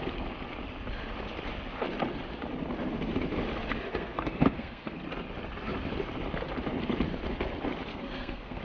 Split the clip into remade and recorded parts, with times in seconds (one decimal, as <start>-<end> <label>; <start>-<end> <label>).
0.0-3.9 recorded; 3.9-5.0 remade; 5.0-7.9 recorded; 7.9-8.6 remade